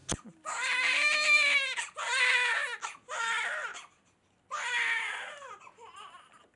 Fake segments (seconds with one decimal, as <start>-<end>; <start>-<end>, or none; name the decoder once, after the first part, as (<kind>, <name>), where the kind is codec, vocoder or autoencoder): none